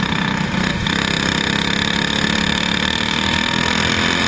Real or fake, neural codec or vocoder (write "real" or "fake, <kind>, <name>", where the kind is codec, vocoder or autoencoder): real